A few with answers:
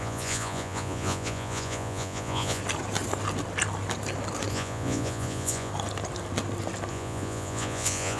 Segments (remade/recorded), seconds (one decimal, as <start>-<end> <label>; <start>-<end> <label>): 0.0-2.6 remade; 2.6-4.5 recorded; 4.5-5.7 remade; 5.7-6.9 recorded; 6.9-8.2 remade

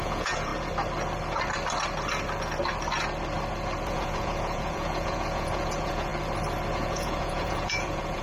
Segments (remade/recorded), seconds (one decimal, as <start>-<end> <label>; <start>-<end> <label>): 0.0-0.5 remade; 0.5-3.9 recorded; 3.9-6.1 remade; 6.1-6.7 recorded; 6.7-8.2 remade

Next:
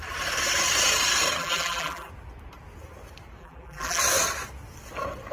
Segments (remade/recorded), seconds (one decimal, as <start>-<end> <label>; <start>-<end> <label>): 0.0-1.4 recorded; 1.4-2.1 remade; 2.1-3.4 recorded; 3.4-4.0 remade; 4.0-5.3 recorded